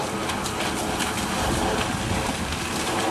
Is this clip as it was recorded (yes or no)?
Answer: yes